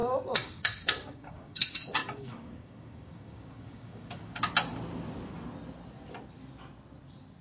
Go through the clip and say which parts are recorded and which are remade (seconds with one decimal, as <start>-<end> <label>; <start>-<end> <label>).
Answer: 0.0-1.6 remade; 1.6-2.0 recorded; 2.0-4.4 remade; 4.4-7.4 recorded